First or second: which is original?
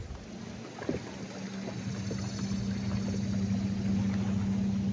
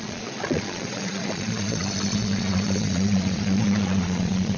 first